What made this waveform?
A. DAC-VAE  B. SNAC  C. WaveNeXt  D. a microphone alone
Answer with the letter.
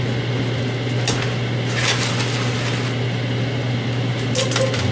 D